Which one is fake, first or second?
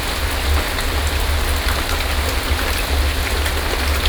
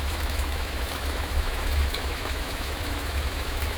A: second